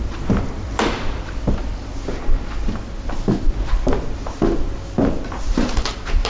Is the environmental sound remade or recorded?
recorded